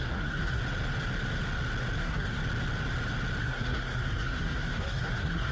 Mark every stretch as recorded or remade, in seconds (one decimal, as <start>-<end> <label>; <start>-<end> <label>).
0.0-0.6 remade; 0.6-2.0 recorded; 2.0-2.4 remade; 2.4-3.4 recorded; 3.4-5.5 remade